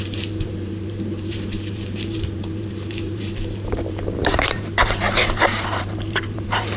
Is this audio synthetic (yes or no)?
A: yes